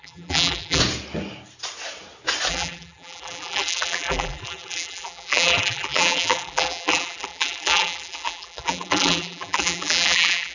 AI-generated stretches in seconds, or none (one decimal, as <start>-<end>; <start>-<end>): 0.0-0.8; 2.5-10.5